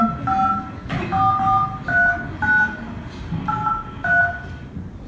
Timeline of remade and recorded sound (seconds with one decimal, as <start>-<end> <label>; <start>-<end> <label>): 0.0-5.1 recorded